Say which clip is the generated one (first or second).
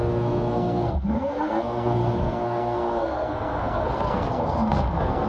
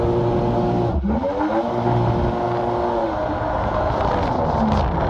first